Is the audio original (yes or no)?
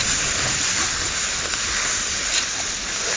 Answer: yes